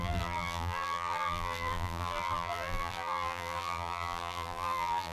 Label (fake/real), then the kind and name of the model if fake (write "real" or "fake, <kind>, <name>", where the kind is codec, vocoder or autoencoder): fake, vocoder, BigVGAN v2